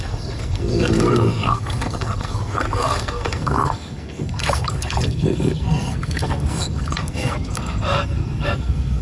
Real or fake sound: fake